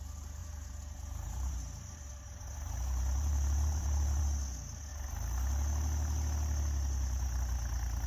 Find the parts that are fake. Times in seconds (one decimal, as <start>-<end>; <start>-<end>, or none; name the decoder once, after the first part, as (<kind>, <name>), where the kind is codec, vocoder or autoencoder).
0.4-4.2 (vocoder, BigVGAN v2)